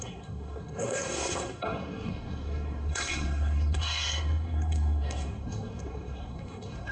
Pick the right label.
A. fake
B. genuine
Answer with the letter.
A